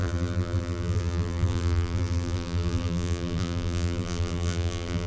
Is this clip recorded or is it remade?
remade